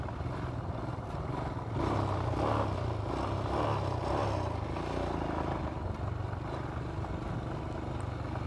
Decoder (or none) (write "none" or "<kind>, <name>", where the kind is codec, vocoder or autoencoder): none